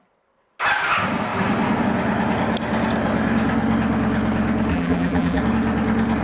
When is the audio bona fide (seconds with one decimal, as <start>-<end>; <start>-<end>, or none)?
0.0-4.7; 5.4-6.2